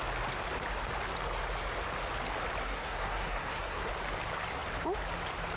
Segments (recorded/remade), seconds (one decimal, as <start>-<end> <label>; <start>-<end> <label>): 0.0-2.6 recorded; 2.6-3.9 remade; 3.9-5.6 recorded